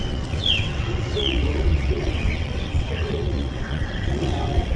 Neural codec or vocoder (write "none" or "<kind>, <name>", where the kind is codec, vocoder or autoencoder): vocoder, WaveNeXt